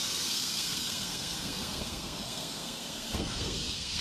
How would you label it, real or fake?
fake